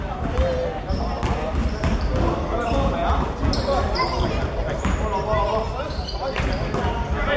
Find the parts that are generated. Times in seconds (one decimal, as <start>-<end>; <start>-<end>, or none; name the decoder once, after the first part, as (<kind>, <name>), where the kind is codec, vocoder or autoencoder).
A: 1.6-2.1 (vocoder, BigVGAN v2)